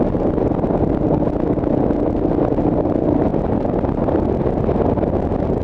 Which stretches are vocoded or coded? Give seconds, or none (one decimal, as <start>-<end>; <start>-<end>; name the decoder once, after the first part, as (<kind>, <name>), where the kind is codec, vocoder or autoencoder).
none